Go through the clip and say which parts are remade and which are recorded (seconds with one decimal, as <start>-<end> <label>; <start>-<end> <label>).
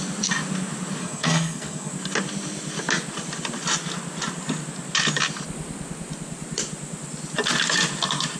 0.0-1.0 recorded; 1.0-1.9 remade; 1.9-8.4 recorded